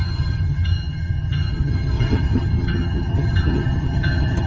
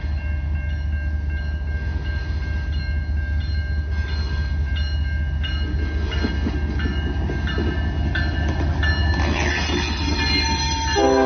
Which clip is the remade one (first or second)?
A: first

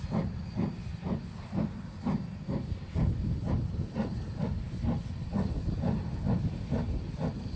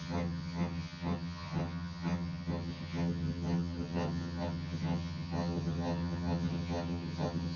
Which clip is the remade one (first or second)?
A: second